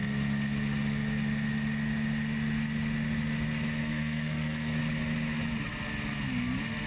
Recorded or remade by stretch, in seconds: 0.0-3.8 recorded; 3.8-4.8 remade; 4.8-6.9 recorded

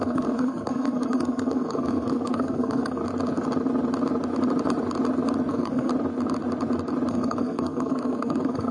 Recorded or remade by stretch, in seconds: 0.0-3.0 remade; 3.0-5.5 recorded; 5.5-5.9 remade; 5.9-7.1 recorded; 7.1-8.7 remade